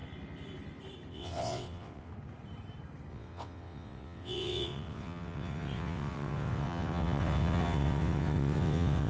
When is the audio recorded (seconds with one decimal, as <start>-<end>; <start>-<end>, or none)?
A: 0.0-1.1; 2.1-3.1